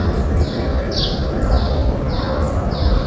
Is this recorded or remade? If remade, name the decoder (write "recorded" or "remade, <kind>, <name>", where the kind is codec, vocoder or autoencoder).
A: recorded